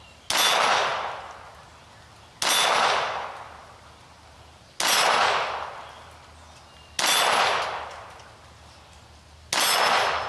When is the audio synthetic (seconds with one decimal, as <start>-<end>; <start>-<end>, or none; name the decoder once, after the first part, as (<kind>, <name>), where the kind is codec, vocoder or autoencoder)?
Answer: none